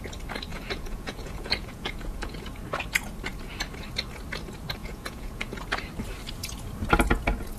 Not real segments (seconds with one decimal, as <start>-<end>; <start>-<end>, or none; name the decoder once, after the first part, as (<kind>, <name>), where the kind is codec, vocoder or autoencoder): 0.5-2.4 (vocoder, Vocos); 4.8-5.6